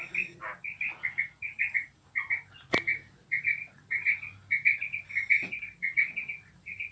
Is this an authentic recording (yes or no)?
yes